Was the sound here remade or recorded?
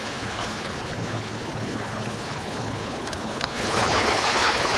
remade